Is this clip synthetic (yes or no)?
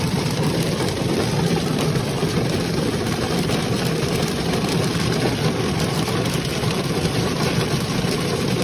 yes